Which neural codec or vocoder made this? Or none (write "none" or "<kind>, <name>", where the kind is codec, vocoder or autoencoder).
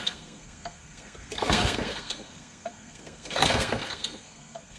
codec, SNAC